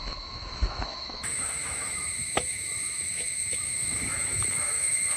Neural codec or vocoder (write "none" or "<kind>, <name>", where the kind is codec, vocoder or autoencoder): autoencoder, DAC-VAE